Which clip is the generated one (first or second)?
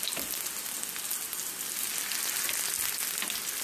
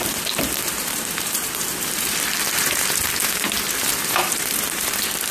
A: second